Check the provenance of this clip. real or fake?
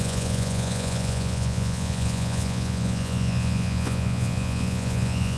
fake